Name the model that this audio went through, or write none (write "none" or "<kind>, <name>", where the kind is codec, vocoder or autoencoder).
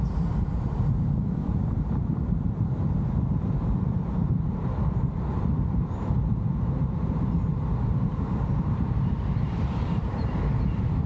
vocoder, BigVGAN v2